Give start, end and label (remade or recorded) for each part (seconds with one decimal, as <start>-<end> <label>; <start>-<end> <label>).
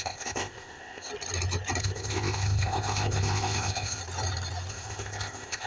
0.0-1.1 remade; 1.1-1.8 recorded; 1.8-4.0 remade; 4.0-4.7 recorded; 4.7-5.7 remade